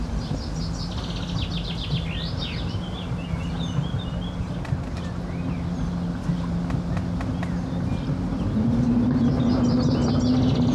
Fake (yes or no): no